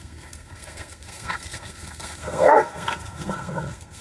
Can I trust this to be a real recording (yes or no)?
no